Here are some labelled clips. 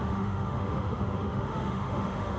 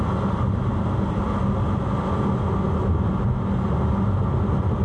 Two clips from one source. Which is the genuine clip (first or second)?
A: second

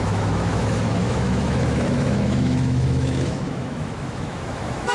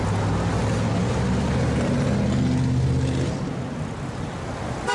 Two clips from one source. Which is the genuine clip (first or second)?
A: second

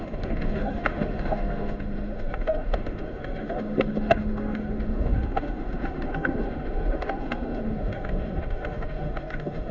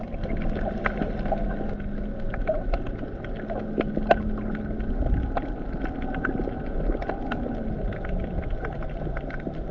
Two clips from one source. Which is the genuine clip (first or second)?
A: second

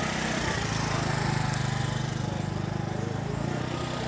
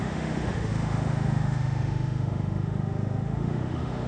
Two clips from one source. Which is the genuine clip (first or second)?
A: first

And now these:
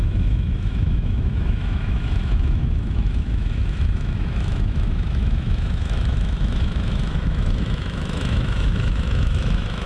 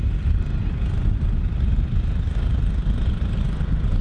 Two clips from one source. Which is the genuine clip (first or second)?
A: second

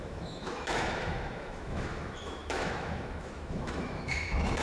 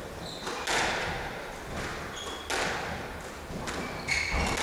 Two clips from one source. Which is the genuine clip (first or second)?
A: second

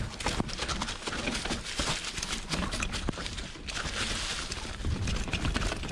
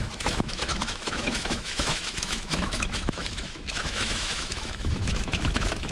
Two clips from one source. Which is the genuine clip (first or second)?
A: first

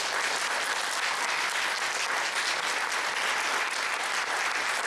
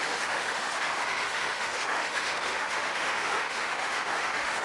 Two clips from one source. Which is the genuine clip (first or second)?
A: first